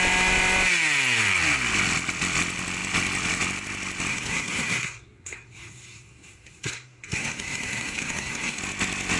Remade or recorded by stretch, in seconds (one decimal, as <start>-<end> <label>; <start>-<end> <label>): 0.0-4.1 recorded; 4.1-8.6 remade; 8.6-9.2 recorded